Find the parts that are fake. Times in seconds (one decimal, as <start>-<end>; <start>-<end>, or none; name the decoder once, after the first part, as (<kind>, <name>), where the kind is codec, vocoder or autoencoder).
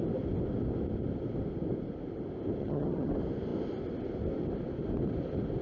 2.6-3.1 (vocoder, HiFi-GAN)